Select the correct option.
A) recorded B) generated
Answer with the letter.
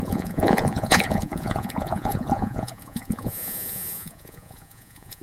B